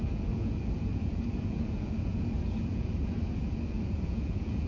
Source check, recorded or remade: remade